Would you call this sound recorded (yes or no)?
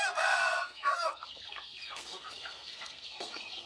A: no